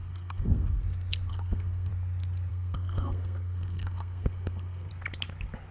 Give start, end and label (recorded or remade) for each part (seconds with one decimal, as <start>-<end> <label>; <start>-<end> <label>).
0.0-0.8 remade; 0.8-1.3 recorded; 1.3-1.9 remade; 1.9-2.5 recorded; 2.5-4.9 remade; 4.9-5.7 recorded